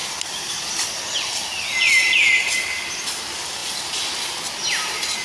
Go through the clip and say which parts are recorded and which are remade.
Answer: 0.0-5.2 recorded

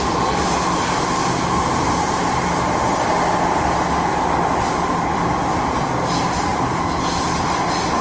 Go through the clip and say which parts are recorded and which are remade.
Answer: 0.0-8.0 recorded

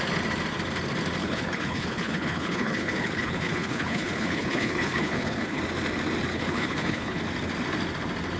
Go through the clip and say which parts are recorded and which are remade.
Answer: 0.0-1.2 recorded; 1.2-5.6 remade; 5.6-6.3 recorded; 6.3-7.2 remade; 7.2-8.4 recorded